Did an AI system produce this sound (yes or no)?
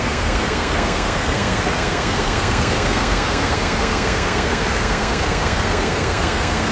yes